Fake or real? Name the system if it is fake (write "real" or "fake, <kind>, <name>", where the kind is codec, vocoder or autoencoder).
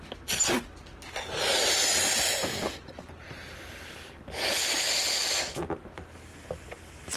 real